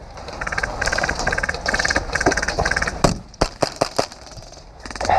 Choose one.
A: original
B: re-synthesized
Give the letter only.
A